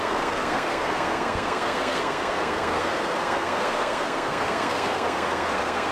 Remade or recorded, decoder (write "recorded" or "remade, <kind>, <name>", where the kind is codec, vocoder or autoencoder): remade, codec, SNAC